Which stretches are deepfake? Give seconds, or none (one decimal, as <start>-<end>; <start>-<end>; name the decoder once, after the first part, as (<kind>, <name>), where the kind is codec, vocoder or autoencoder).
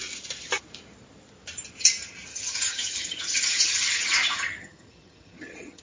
2.3-5.8 (vocoder, HiFi-GAN)